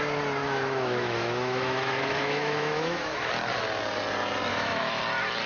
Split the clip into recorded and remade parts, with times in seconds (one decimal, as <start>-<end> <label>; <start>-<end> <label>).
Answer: 0.0-0.4 recorded; 0.4-3.3 remade; 3.3-4.5 recorded; 4.5-5.0 remade; 5.0-5.5 recorded